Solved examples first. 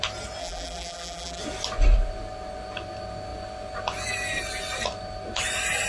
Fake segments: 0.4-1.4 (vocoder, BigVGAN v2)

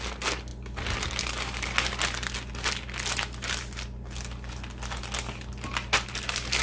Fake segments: none

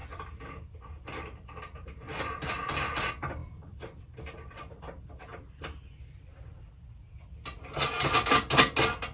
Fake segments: 3.4-4.8 (vocoder, BigVGAN v2); 5.3-6.7

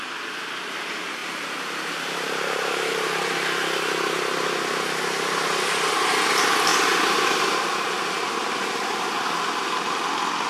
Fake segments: 1.2-3.3 (vocoder, BigVGAN v2); 6.7-9.1

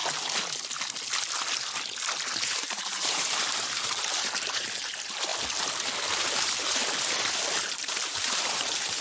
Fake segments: 2.4-5.3 (vocoder, BigVGAN v2); 6.2-6.8; 7.6-9.0

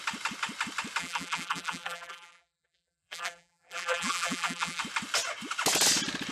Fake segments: 1.0-4.8 (vocoder, BigVGAN v2)

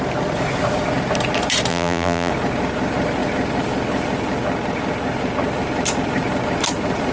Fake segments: 1.7-2.3 (vocoder, BigVGAN v2)